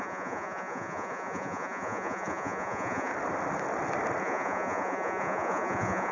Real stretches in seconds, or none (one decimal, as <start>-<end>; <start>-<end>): 3.1-4.2